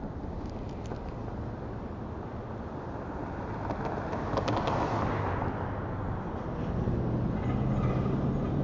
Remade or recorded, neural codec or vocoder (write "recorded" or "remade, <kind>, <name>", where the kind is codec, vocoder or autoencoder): recorded